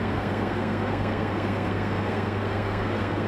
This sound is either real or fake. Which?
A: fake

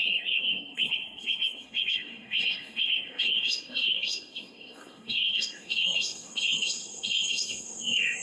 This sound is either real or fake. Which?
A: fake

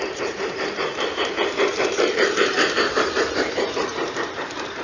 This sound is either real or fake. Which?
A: fake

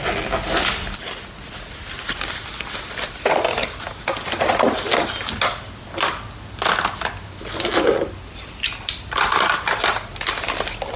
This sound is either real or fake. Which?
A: real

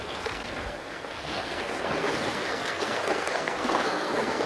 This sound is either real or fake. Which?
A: fake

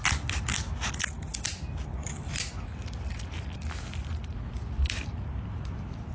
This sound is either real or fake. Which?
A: real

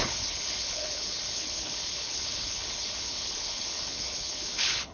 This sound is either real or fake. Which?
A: fake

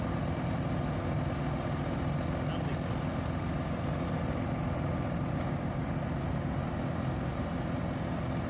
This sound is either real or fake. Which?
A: real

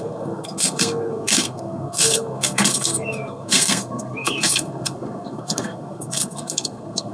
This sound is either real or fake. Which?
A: fake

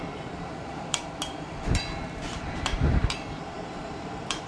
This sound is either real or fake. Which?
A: fake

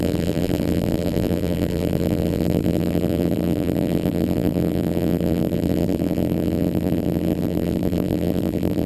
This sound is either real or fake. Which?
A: fake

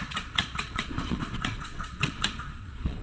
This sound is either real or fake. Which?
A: fake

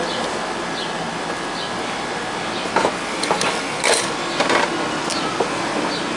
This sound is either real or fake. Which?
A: real